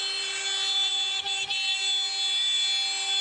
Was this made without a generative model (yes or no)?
yes